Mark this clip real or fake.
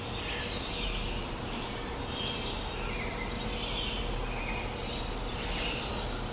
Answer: real